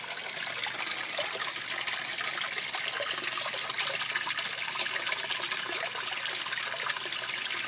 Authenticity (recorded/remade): recorded